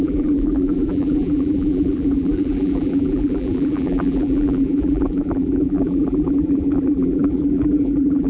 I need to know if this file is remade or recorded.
remade